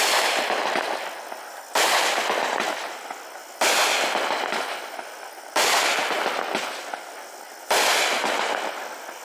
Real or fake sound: real